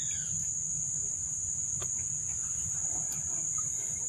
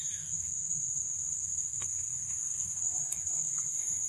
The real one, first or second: first